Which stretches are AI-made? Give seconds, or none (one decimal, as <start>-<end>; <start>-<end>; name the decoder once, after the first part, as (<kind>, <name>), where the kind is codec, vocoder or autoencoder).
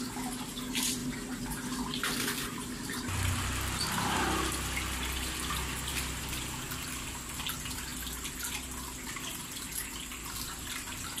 0.0-7.9 (vocoder, BigVGAN v2)